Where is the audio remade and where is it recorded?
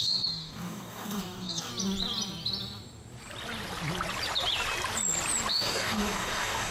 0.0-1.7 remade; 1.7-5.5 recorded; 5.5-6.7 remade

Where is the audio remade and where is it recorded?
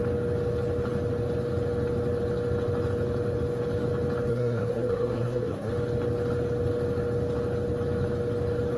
0.0-4.3 recorded; 4.3-5.7 remade; 5.7-8.8 recorded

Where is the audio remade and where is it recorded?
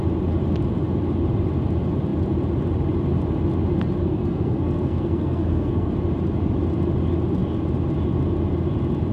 0.0-4.0 recorded; 4.0-5.9 remade; 5.9-9.1 recorded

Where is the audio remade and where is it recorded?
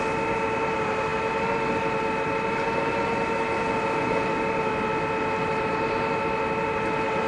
0.0-7.3 recorded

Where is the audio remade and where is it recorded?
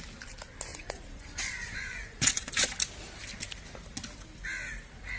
0.0-0.7 recorded; 0.7-2.5 remade; 2.5-5.2 recorded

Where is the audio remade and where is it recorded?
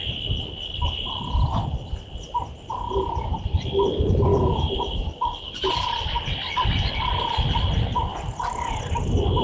0.0-4.3 recorded; 4.3-5.7 remade; 5.7-9.4 recorded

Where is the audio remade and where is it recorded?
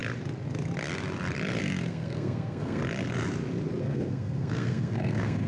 0.0-1.6 recorded; 1.6-2.8 remade; 2.8-3.8 recorded; 3.8-5.5 remade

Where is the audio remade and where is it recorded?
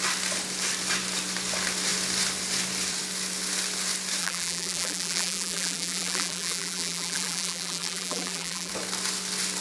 0.0-4.2 recorded; 4.2-8.7 remade; 8.7-9.6 recorded